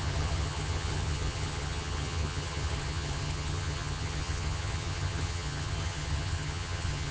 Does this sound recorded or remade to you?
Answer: remade